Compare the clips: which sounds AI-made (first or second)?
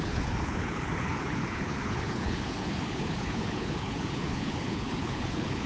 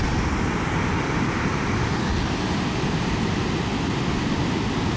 first